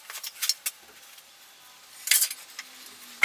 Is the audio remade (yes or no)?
no